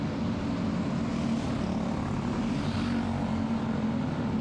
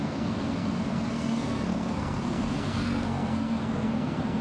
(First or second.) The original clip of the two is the first